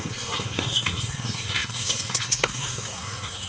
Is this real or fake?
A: fake